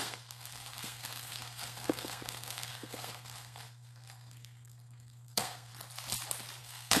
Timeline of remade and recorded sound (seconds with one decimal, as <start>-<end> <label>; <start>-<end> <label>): 0.0-5.7 remade; 5.7-6.6 recorded; 6.6-7.0 remade